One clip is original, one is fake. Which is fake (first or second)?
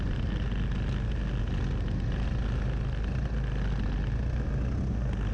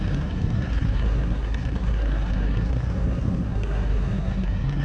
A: second